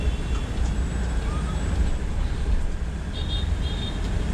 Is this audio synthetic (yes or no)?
no